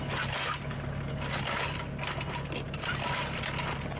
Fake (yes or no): no